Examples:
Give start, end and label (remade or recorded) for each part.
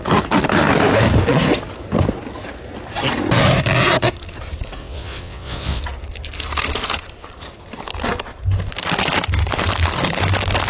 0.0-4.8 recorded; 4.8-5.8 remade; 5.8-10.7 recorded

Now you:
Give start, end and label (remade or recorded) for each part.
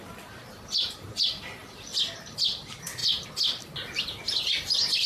0.0-5.1 recorded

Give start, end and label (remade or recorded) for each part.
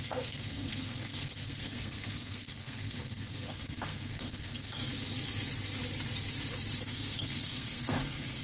0.0-4.8 remade; 4.8-6.8 recorded; 6.8-8.4 remade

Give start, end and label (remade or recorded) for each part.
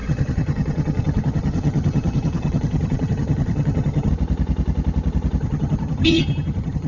0.0-4.1 remade; 4.1-5.4 recorded; 5.4-6.9 remade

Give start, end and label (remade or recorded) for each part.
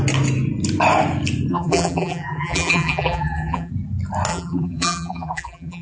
0.0-1.5 recorded; 1.5-3.7 remade; 3.7-4.3 recorded; 4.3-5.8 remade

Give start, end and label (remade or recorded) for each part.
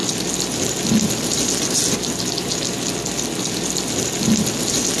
0.0-5.0 recorded